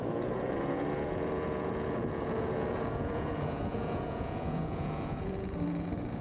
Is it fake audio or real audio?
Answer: fake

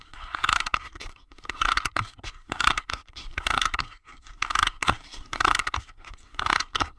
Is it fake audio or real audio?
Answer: fake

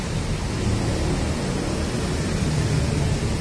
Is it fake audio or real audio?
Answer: real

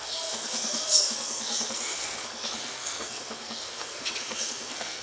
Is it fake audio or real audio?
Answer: fake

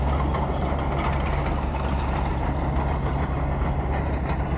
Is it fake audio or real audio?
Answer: real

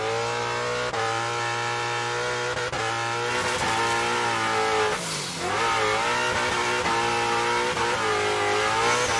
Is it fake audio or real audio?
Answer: real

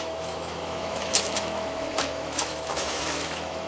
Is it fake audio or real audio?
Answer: fake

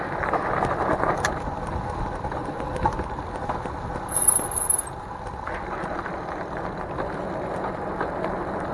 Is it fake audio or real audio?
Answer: real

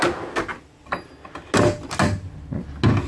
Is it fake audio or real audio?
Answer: real